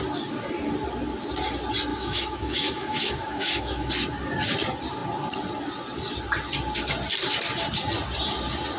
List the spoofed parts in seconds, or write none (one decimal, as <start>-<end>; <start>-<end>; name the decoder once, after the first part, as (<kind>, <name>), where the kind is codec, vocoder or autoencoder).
1.9-3.9 (autoencoder, DAC-VAE)